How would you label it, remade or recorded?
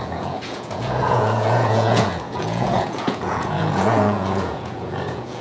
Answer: remade